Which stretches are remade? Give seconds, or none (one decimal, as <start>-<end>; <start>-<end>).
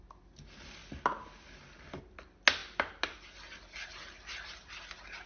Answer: none